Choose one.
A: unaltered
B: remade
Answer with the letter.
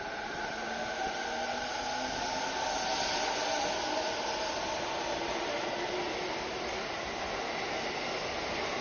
A